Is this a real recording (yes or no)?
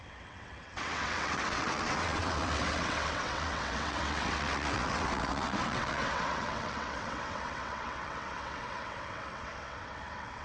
no